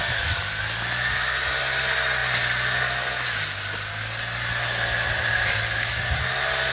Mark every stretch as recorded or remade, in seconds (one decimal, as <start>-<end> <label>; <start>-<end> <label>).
0.0-6.7 recorded